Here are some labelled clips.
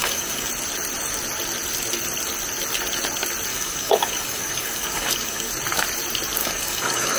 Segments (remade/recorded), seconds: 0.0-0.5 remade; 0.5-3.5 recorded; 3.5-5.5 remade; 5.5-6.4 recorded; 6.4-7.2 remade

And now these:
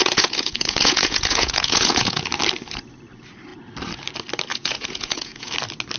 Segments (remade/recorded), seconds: 0.0-2.2 remade; 2.2-4.5 recorded; 4.5-5.5 remade; 5.5-6.0 recorded

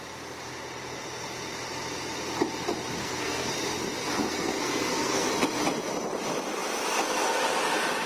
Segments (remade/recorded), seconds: 0.0-3.0 recorded; 3.0-3.5 remade; 3.5-4.0 recorded; 4.0-5.3 remade; 5.3-8.1 recorded

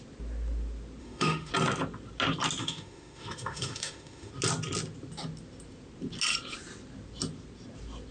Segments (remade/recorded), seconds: 0.0-1.0 recorded; 1.0-1.5 remade; 1.5-2.6 recorded; 2.6-4.3 remade; 4.3-8.1 recorded

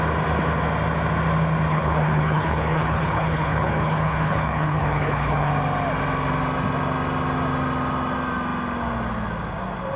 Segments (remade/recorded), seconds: 0.0-1.7 recorded; 1.7-5.5 remade; 5.5-10.0 recorded

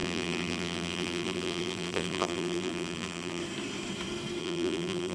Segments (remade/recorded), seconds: 0.0-3.4 remade; 3.4-4.4 recorded; 4.4-5.1 remade